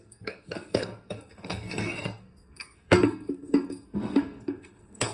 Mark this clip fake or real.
fake